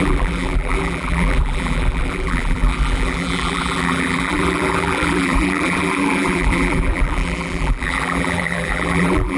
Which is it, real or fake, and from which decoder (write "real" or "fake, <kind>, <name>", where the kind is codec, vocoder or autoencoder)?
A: fake, vocoder, BigVGAN v2